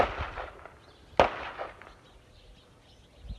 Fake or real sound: real